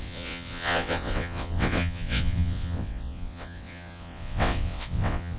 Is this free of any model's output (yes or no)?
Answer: no